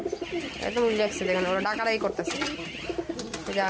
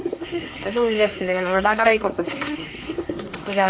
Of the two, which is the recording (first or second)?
first